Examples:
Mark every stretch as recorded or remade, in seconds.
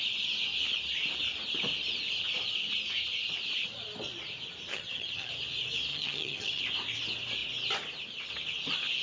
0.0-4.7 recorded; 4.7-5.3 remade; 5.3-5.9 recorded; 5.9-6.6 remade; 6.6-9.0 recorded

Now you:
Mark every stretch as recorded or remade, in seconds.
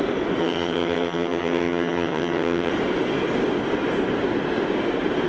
0.0-0.4 recorded; 0.4-2.7 remade; 2.7-5.3 recorded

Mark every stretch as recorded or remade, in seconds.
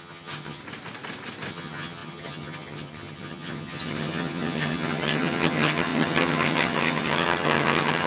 0.0-0.6 remade; 0.6-1.5 recorded; 1.5-8.1 remade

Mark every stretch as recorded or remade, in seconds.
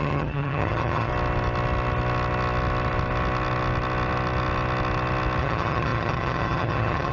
0.0-1.1 remade; 1.1-5.4 recorded; 5.4-7.1 remade